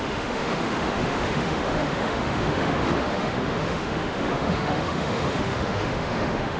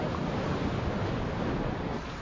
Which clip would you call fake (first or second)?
first